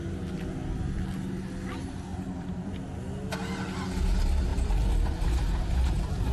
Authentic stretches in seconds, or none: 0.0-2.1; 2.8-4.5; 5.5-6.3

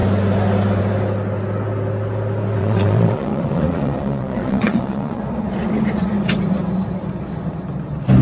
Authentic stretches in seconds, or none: 0.0-2.6; 5.2-8.2

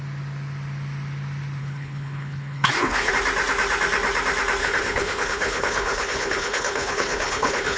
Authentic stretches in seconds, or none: 0.0-1.6; 3.1-4.6

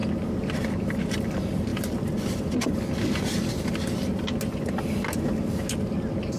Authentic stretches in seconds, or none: 0.0-6.4

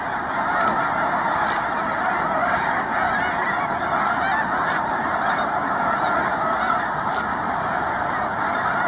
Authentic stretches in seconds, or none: 0.0-2.4; 2.9-8.9

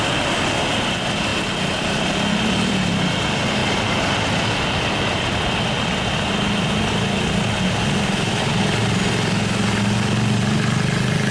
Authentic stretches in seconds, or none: 0.0-11.3

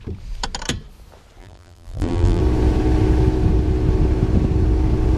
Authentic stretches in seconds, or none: 0.0-1.4; 2.4-5.2

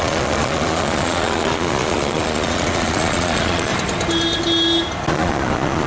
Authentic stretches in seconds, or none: 3.7-5.1